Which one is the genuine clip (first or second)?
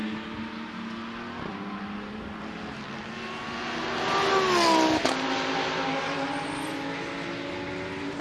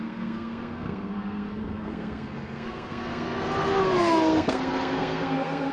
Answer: first